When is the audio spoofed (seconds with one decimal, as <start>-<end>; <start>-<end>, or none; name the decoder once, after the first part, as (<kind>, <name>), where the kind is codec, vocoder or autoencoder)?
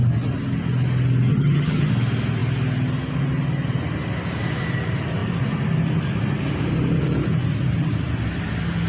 1.3-1.9 (vocoder, HiFi-GAN)